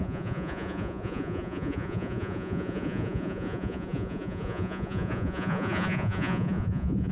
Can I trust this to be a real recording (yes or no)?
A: no